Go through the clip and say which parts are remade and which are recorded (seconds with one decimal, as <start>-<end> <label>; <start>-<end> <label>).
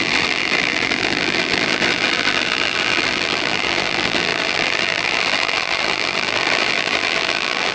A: 0.0-7.7 remade